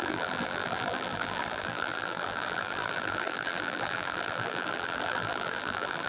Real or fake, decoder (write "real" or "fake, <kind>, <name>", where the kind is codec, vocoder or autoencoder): fake, vocoder, BigVGAN v2